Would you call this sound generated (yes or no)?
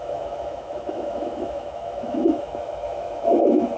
yes